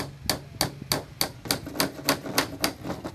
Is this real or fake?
real